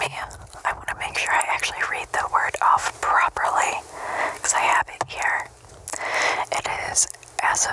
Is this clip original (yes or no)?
yes